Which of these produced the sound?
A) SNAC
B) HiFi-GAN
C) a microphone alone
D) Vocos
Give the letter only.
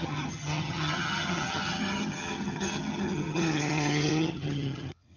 B